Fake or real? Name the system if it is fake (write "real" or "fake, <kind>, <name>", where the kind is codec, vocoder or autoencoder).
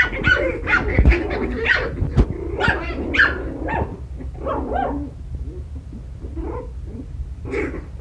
real